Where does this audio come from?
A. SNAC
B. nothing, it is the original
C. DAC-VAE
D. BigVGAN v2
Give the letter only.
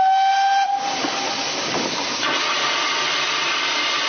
B